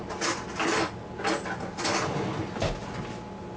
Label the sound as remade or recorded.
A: recorded